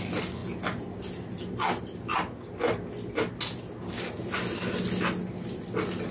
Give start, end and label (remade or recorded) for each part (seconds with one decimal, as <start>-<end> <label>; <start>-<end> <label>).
0.0-6.1 recorded